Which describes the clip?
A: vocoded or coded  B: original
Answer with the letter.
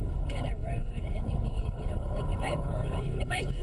A